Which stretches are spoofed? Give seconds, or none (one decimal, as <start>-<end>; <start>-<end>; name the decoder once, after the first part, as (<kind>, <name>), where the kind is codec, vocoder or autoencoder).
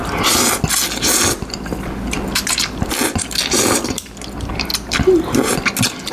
none